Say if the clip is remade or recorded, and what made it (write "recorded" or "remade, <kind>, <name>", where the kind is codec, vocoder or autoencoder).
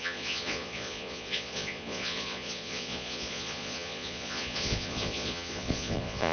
remade, vocoder, Vocos